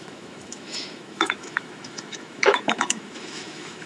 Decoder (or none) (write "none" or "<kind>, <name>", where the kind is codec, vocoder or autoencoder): autoencoder, DAC-VAE